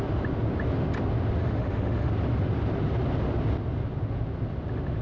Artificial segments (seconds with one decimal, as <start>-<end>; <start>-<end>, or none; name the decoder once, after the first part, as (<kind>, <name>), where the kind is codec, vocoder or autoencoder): 1.4-2.1 (autoencoder, DAC-VAE)